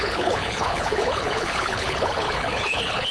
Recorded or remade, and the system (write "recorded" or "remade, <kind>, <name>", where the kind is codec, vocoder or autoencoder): remade, codec, HILCodec